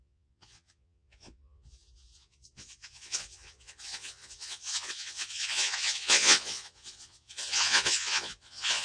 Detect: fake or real fake